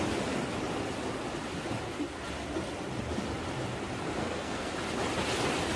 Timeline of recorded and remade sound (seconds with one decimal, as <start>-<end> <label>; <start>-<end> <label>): 0.0-4.2 recorded; 4.2-4.7 remade; 4.7-5.8 recorded